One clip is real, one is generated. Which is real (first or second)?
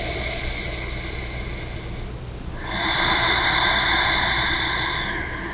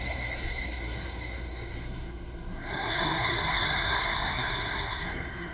first